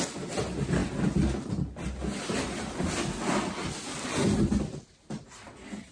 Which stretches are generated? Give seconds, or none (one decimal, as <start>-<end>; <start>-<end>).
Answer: none